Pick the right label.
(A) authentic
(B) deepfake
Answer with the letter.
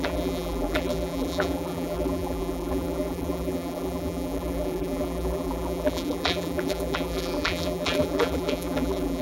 B